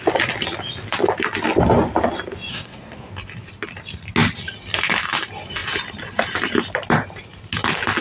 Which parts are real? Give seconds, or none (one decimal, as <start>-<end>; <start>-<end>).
0.0-2.5; 3.1-8.0